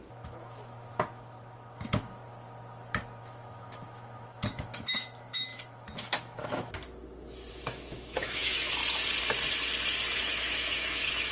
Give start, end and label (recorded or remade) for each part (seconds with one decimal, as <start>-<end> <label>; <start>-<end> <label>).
0.0-2.2 remade; 2.2-3.2 recorded; 3.2-6.8 remade; 6.8-7.5 recorded; 7.5-8.8 remade; 8.8-10.2 recorded; 10.2-11.3 remade